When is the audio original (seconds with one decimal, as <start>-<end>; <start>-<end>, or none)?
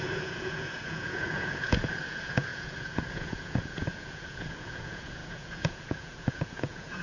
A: none